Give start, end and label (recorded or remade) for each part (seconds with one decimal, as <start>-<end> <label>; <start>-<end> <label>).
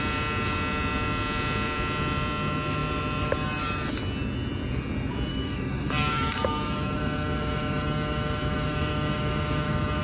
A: 0.0-5.3 recorded; 5.3-10.0 remade